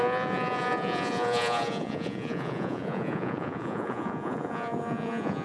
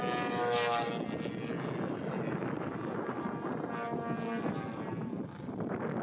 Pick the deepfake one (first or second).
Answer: first